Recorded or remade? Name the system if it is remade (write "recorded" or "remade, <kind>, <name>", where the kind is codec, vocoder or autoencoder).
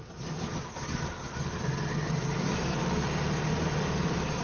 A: recorded